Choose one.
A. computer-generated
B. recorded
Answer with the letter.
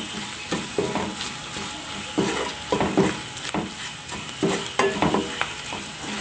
B